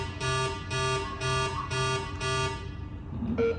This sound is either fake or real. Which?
real